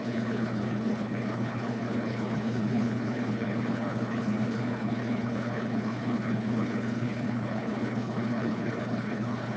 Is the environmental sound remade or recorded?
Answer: remade